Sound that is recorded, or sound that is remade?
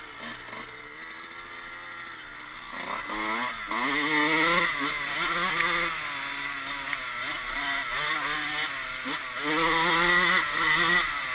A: recorded